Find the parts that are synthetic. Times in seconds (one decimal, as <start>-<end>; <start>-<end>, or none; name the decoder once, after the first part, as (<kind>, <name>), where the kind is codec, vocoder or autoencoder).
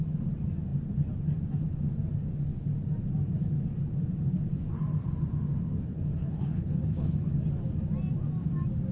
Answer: 6.2-7.3 (codec, HILCodec)